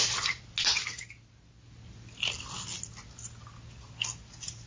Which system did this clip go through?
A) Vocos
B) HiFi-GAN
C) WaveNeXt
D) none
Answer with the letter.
D